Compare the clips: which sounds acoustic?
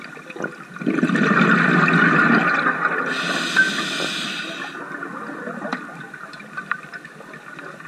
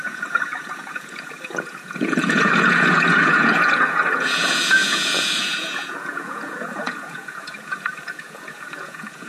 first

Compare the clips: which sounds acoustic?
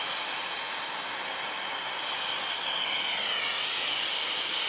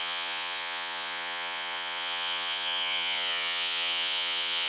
first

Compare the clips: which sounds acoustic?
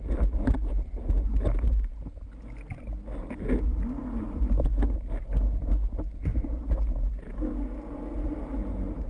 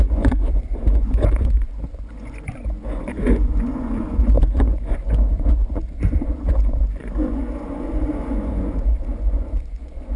first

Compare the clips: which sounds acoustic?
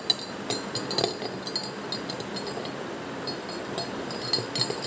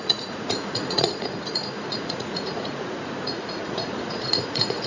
first